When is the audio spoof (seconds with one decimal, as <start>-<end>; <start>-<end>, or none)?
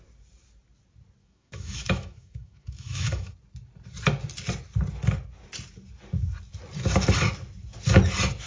1.2-3.3